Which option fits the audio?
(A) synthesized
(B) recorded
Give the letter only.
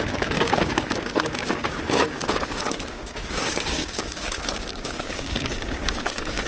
A